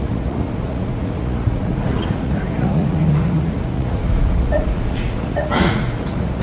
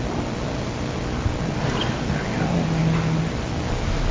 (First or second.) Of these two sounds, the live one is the second